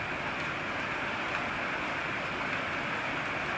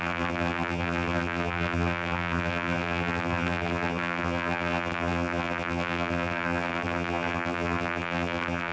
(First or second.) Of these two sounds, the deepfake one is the second